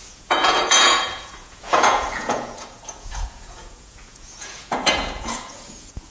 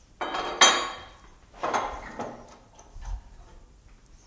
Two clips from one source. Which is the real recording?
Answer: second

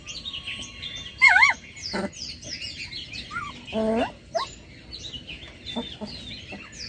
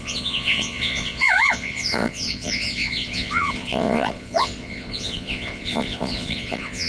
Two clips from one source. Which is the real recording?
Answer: first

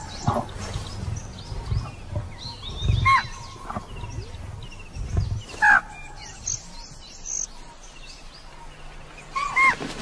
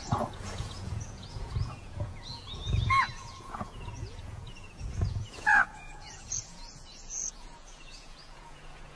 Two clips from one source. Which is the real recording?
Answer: first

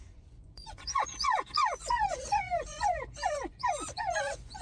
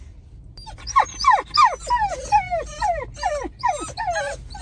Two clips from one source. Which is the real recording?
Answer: second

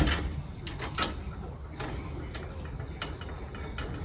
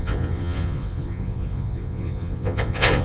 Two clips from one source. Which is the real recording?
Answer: first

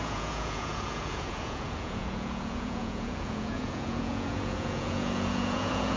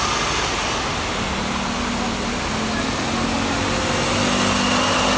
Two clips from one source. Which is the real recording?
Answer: second